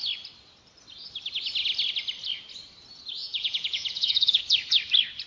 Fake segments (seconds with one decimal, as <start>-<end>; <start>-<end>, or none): 3.2-4.4